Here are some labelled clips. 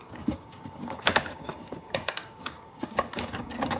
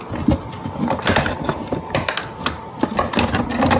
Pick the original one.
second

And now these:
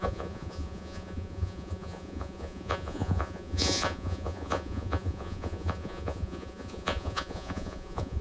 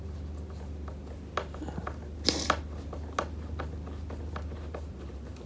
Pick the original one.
second